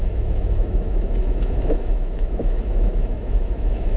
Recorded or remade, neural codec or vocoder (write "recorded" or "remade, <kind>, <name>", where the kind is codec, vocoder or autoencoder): remade, autoencoder, DAC-VAE